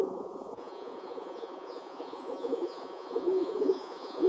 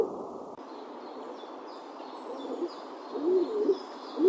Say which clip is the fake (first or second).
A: first